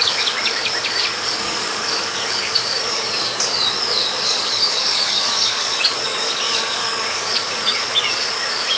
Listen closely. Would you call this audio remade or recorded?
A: remade